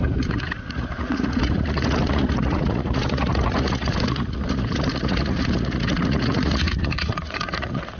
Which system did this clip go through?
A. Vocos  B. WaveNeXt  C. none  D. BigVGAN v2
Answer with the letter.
A